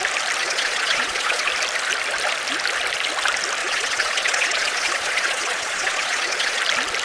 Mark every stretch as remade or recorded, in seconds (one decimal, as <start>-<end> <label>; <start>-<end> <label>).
0.0-0.4 recorded; 0.4-1.5 remade; 1.5-3.6 recorded; 3.6-6.6 remade; 6.6-7.0 recorded